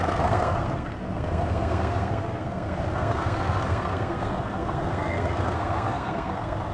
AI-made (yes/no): yes